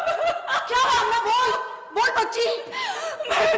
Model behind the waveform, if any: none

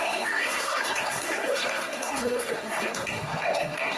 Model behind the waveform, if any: codec, SNAC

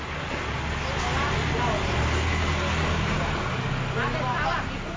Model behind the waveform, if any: none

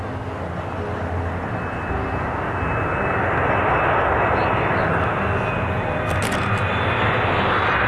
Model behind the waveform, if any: none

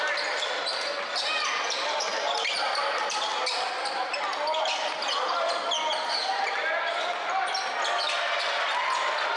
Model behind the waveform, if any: none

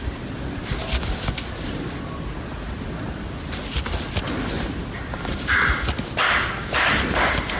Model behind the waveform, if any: none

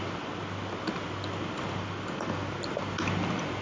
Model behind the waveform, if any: none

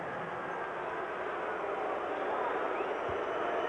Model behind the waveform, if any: none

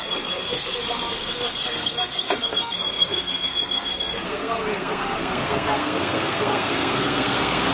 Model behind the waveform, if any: codec, SNAC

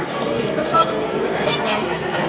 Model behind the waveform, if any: codec, SNAC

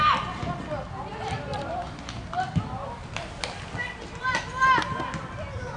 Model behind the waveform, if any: none